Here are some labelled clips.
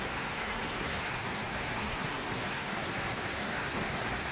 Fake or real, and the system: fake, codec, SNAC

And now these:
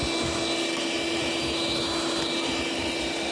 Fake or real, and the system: real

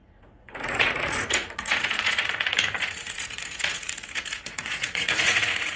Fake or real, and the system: fake, vocoder, Vocos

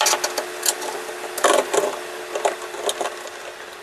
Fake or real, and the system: real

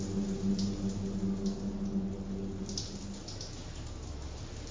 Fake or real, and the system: real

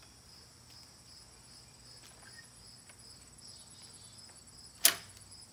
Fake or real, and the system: real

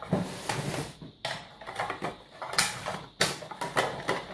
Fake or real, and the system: real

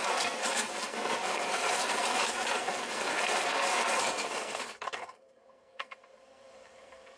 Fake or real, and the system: fake, codec, SNAC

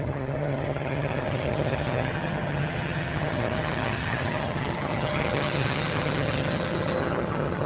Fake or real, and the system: fake, vocoder, HiFi-GAN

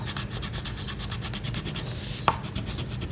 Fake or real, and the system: real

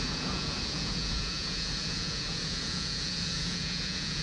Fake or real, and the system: fake, vocoder, Vocos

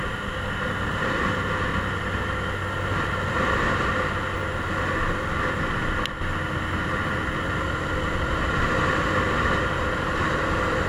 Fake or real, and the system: real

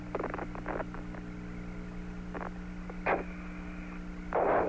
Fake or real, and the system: real